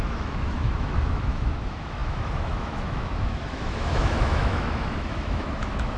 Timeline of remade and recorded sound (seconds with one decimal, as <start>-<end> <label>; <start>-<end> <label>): 0.0-6.0 remade